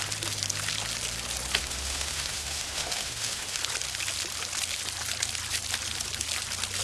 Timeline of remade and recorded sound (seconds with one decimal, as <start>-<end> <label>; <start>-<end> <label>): 0.0-1.6 recorded; 1.6-3.6 remade; 3.6-6.8 recorded